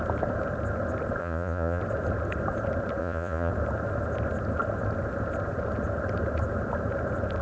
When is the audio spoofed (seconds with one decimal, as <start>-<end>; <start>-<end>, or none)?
1.2-1.8; 3.0-3.5